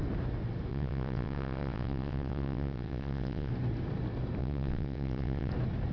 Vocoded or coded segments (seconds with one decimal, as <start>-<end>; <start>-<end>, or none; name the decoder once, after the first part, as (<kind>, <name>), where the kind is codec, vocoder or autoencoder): 0.7-3.5 (vocoder, WaveNeXt); 4.4-5.5